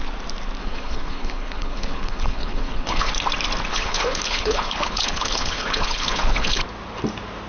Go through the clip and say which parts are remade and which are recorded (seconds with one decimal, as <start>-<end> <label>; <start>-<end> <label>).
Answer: 0.0-0.6 recorded; 0.6-3.1 remade; 3.1-3.7 recorded; 3.7-6.6 remade; 6.6-7.5 recorded